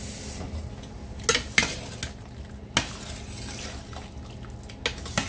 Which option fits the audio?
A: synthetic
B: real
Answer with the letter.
B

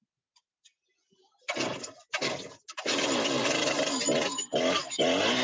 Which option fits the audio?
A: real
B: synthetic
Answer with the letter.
A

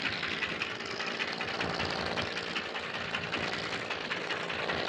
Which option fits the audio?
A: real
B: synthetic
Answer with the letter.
A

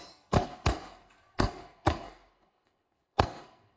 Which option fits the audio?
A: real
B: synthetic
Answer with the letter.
B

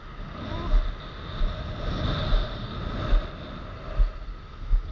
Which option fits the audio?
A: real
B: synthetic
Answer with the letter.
A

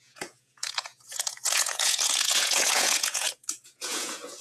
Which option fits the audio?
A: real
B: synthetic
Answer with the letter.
B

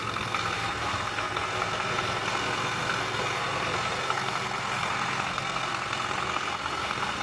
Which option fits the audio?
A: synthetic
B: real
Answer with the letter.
A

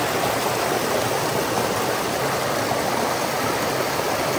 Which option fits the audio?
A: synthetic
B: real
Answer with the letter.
B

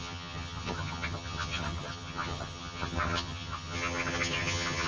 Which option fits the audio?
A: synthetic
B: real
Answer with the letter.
A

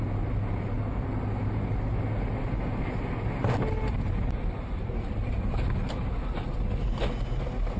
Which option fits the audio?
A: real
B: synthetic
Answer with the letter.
A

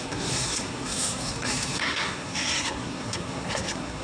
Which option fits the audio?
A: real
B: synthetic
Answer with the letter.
B